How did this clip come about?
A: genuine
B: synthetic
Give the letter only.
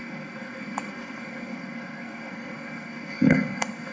B